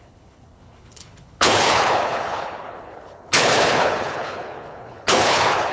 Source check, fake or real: fake